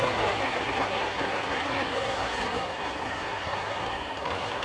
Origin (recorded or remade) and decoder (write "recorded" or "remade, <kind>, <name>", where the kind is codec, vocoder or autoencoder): remade, codec, SNAC